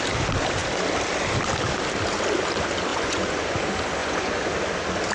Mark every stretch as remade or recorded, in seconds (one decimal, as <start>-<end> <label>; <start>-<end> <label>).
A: 0.0-2.9 recorded; 2.9-3.6 remade; 3.6-4.0 recorded; 4.0-4.5 remade; 4.5-5.1 recorded